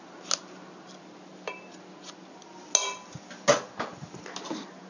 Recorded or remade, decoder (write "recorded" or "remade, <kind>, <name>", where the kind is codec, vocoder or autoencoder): recorded